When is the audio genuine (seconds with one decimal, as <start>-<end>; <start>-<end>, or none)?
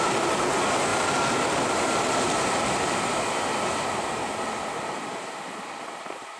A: 0.0-6.4